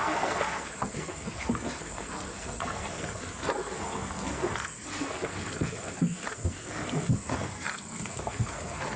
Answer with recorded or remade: remade